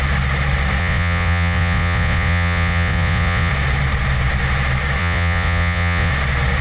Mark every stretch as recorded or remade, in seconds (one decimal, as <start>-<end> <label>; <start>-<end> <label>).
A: 0.0-0.8 recorded; 0.8-3.5 remade; 3.5-5.0 recorded; 5.0-6.1 remade; 6.1-6.6 recorded